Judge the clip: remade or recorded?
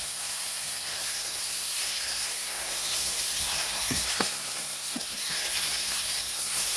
remade